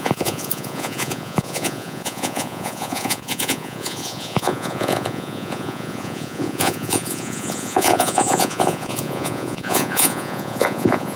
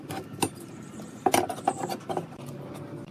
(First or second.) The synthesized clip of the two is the first